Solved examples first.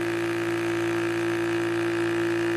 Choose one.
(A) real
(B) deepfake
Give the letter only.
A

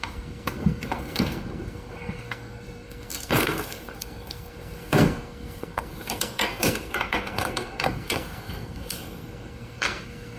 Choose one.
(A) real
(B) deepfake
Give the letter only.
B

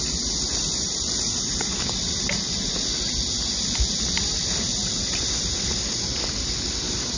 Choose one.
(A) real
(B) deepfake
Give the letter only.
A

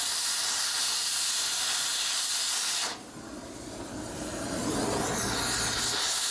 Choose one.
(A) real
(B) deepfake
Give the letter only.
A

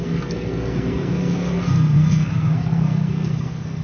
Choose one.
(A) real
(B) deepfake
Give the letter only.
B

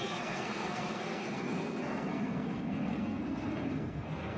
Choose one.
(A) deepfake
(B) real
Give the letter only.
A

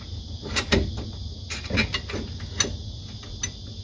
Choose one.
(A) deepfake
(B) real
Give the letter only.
B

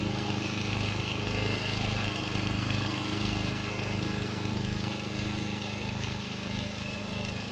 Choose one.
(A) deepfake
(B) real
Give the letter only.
A